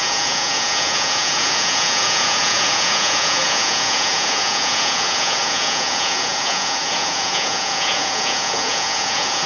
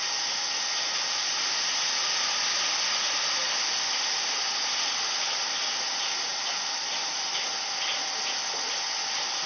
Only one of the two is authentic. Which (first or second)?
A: second